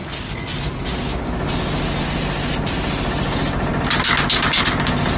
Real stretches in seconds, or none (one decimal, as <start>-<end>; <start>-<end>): 0.0-5.2